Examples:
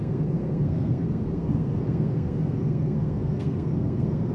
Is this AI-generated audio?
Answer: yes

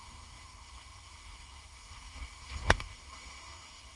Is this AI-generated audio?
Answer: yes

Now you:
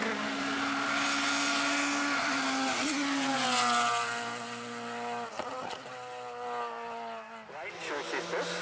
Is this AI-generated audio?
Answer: no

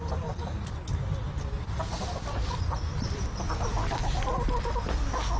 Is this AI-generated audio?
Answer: no